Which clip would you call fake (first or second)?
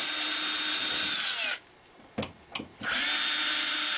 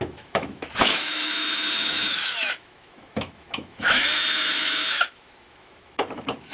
second